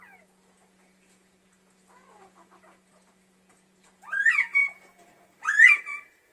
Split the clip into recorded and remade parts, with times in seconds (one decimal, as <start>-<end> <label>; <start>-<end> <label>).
0.0-6.3 remade